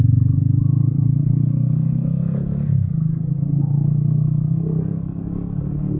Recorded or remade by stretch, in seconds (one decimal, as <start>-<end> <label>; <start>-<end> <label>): 0.0-0.8 recorded; 0.8-3.3 remade; 3.3-4.9 recorded; 4.9-5.6 remade; 5.6-6.0 recorded